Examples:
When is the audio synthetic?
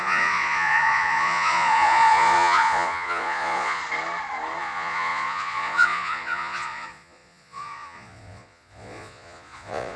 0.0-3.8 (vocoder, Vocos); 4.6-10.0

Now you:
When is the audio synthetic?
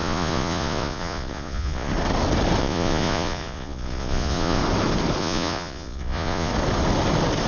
0.0-1.9 (vocoder, Vocos); 2.6-4.6; 5.2-6.5